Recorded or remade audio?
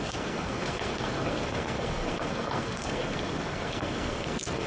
remade